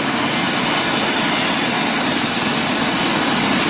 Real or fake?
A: real